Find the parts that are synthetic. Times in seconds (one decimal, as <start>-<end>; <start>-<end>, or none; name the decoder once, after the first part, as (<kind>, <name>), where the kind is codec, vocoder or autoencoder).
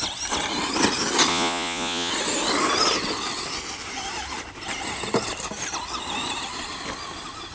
1.3-2.1 (vocoder, Vocos)